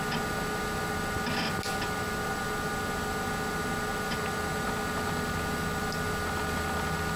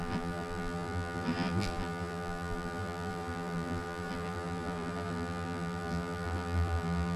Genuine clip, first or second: first